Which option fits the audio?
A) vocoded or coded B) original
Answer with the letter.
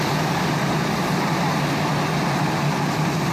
B